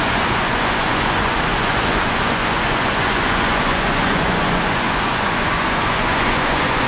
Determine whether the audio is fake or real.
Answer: fake